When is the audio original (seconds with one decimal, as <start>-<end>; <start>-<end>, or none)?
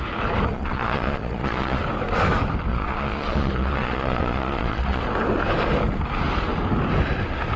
0.0-0.5; 1.8-2.7; 5.0-7.6